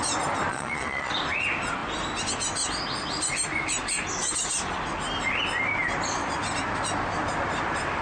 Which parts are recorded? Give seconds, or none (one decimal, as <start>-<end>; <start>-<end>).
0.0-0.5; 1.1-8.0